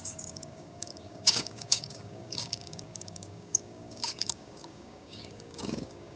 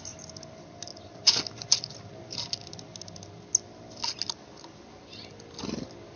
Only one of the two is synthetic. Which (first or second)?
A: first